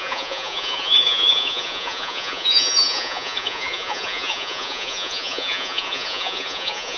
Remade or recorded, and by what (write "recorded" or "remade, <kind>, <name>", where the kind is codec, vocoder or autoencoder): remade, vocoder, Vocos